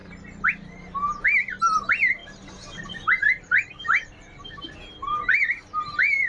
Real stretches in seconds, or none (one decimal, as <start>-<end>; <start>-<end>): 0.0-1.4